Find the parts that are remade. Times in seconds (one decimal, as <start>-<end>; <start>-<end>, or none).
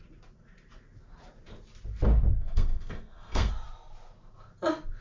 2.3-3.5